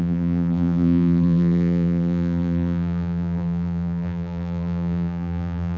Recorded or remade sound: remade